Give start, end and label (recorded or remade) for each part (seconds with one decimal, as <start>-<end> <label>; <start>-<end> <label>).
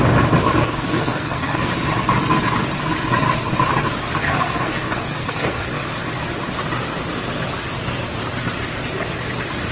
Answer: 0.0-0.6 recorded; 0.6-1.7 remade; 1.7-4.2 recorded; 4.2-5.8 remade; 5.8-9.7 recorded